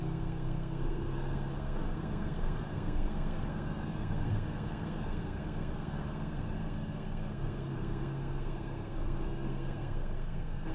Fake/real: fake